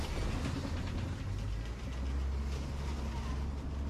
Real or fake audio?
real